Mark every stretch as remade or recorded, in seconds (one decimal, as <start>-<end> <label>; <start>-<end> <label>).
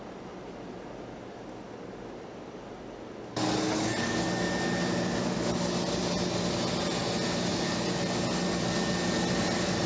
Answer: 0.0-9.9 recorded